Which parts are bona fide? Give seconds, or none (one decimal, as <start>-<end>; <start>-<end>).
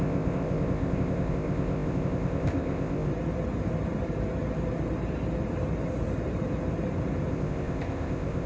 3.1-7.3